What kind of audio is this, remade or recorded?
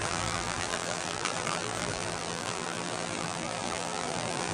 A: remade